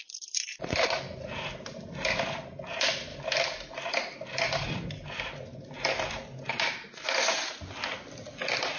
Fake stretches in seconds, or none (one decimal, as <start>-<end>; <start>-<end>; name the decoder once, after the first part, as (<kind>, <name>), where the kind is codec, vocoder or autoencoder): none